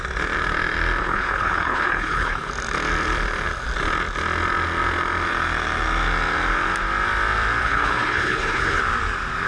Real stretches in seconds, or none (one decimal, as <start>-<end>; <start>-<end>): 0.0-1.0; 2.5-7.6; 8.8-9.5